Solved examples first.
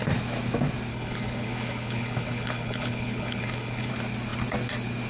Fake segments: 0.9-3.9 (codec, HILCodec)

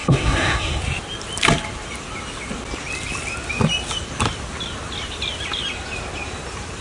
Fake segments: 0.0-0.8 (codec, SNAC)